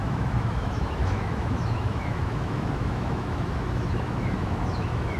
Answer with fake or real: fake